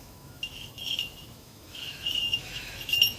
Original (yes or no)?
no